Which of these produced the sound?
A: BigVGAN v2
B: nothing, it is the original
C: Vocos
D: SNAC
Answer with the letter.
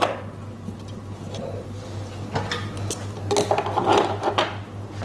B